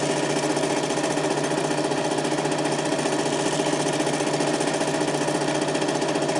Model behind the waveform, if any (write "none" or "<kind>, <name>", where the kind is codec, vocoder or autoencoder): none